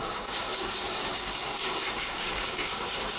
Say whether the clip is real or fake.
fake